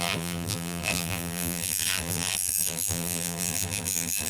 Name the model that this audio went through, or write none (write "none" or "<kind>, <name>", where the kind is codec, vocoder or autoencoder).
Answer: vocoder, BigVGAN v2